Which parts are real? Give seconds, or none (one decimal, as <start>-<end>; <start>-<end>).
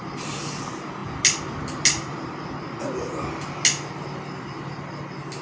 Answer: 0.0-5.4